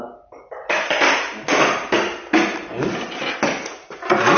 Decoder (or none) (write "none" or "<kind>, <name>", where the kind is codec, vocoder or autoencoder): none